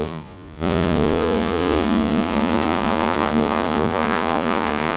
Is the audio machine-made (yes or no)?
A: yes